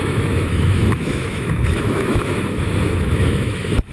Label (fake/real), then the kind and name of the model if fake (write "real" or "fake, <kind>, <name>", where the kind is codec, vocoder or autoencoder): fake, autoencoder, DAC-VAE